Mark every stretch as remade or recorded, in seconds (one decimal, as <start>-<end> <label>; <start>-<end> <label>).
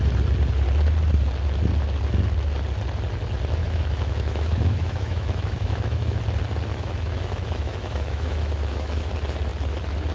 0.0-3.6 recorded; 3.6-6.2 remade; 6.2-6.7 recorded; 6.7-9.1 remade; 9.1-10.1 recorded